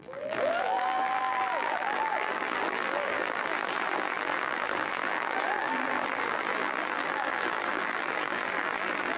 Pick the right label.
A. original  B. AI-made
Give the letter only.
B